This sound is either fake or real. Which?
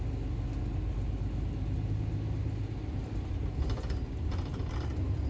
real